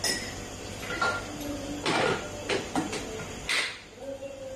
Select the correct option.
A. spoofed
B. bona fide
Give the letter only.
B